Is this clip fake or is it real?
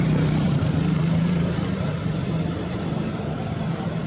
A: fake